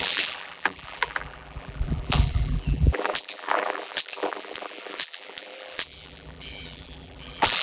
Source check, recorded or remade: remade